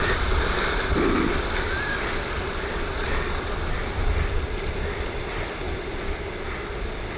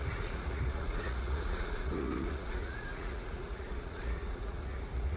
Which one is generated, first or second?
second